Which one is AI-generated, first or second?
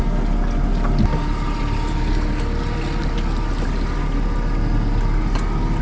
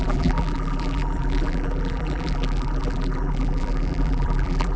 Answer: second